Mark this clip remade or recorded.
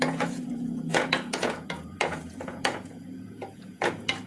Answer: remade